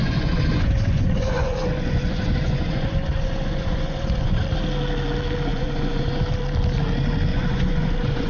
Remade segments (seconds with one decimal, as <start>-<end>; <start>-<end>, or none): 0.0-4.4; 5.5-6.2; 7.3-8.3